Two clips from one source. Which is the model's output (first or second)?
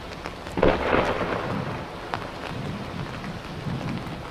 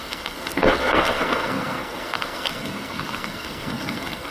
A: second